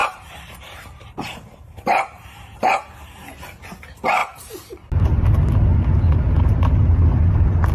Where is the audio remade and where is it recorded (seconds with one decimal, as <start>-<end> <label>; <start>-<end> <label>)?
0.0-2.7 remade; 2.7-7.7 recorded